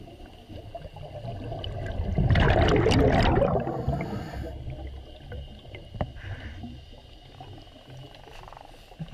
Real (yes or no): yes